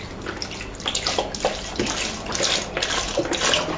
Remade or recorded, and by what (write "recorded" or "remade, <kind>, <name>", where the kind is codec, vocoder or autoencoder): recorded